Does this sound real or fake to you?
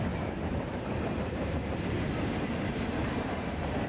fake